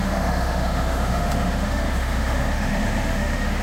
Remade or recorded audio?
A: remade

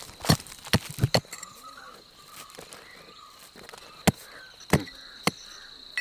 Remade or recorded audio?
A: recorded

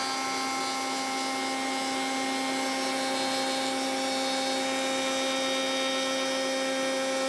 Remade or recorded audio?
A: recorded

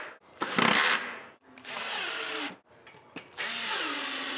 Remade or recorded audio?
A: recorded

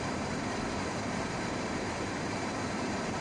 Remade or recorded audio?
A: remade